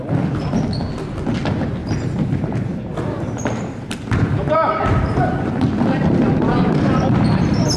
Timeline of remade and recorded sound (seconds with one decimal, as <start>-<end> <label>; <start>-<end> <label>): 0.0-1.8 recorded; 1.8-5.5 remade; 5.5-7.8 recorded